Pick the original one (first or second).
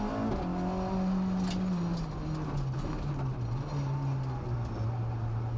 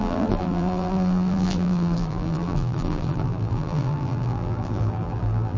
first